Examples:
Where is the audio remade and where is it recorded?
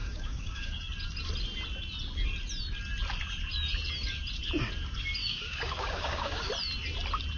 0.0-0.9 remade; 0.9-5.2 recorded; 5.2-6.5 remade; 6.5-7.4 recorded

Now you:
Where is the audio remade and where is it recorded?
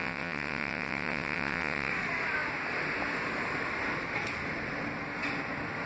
0.0-1.9 remade; 1.9-5.9 recorded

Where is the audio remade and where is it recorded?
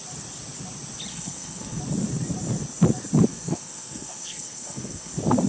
0.0-1.1 recorded; 1.1-1.8 remade; 1.8-3.3 recorded; 3.3-5.1 remade; 5.1-5.5 recorded